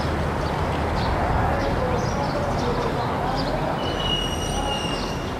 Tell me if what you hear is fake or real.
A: real